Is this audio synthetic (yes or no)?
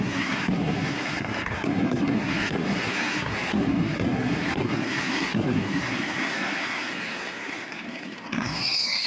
yes